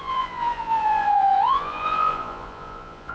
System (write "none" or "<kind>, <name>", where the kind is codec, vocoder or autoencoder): vocoder, Vocos